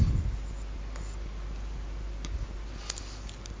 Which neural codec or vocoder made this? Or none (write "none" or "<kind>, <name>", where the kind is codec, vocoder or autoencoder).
none